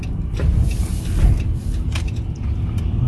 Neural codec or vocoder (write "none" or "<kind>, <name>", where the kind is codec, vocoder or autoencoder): vocoder, BigVGAN v2